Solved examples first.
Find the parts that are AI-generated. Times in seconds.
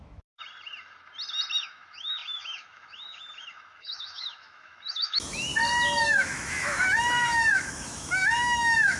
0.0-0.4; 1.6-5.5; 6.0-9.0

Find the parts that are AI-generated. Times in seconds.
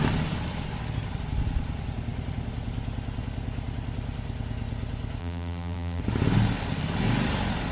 5.2-6.0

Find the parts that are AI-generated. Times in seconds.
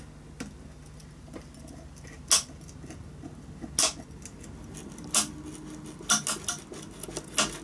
none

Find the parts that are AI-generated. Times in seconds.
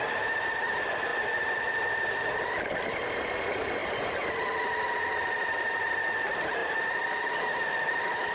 none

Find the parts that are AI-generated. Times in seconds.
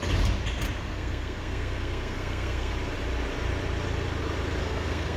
0.8-2.7; 4.6-5.2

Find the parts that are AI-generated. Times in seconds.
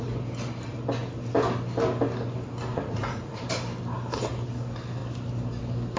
2.7-3.4